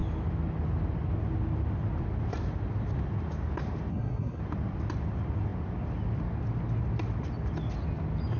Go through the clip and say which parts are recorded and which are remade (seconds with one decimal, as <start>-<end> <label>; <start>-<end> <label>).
0.0-3.9 recorded; 3.9-4.4 remade; 4.4-8.4 recorded